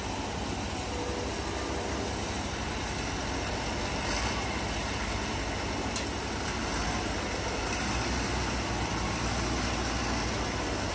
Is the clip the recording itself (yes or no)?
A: yes